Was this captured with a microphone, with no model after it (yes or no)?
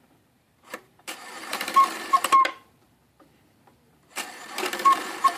no